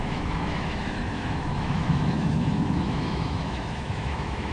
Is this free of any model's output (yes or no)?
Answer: no